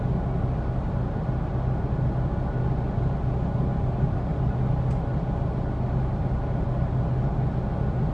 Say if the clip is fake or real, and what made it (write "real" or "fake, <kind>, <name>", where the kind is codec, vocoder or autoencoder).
real